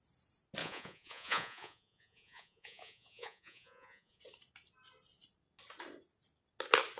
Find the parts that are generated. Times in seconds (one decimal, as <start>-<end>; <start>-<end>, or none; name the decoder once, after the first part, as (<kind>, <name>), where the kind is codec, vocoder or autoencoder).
0.6-4.2 (vocoder, Vocos)